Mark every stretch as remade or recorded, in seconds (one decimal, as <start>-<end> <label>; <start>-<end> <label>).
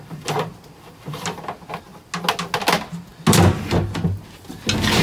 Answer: 0.0-5.0 recorded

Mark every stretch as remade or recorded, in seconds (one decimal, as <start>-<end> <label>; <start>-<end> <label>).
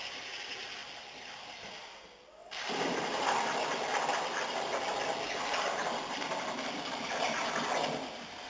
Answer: 0.0-0.8 recorded; 0.8-2.0 remade; 2.0-2.4 recorded; 2.4-7.4 remade; 7.4-8.5 recorded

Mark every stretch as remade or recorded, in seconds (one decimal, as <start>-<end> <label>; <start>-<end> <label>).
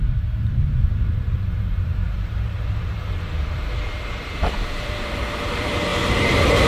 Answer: 0.0-6.7 remade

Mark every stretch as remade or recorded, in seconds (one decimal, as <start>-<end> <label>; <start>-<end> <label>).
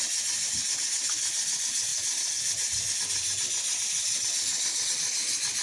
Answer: 0.0-5.6 recorded